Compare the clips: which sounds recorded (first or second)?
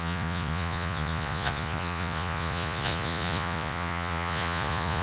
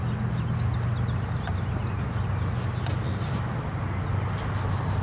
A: second